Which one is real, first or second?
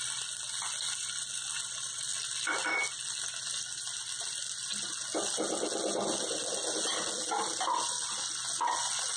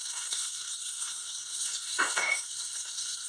first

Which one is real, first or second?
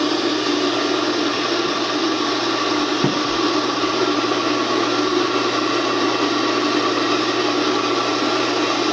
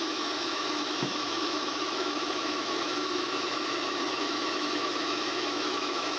first